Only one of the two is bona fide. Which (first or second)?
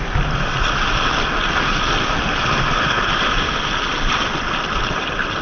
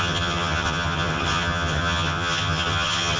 first